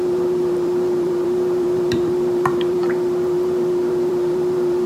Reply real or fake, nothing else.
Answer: fake